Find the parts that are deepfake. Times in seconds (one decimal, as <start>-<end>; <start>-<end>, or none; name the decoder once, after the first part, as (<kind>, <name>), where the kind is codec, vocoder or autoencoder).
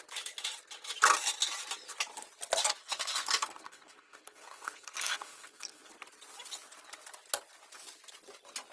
2.8-5.9 (codec, SNAC)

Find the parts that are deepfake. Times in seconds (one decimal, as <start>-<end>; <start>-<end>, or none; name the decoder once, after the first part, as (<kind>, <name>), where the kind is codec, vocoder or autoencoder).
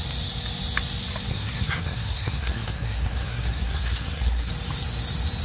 1.3-4.5 (codec, SNAC)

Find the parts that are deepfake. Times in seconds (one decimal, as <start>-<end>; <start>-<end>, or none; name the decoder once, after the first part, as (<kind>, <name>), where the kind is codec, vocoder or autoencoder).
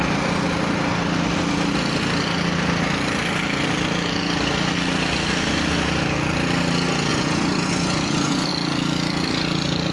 7.1-8.5 (vocoder, Vocos)